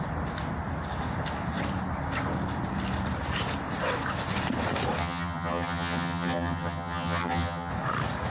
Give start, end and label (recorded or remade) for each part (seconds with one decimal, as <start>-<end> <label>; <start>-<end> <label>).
0.0-5.0 recorded; 5.0-7.7 remade; 7.7-8.3 recorded